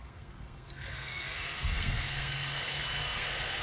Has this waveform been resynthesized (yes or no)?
yes